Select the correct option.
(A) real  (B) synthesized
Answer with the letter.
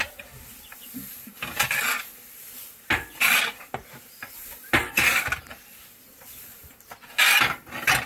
A